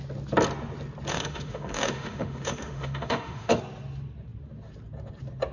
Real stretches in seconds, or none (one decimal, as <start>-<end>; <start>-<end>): 0.0-1.1; 3.6-5.5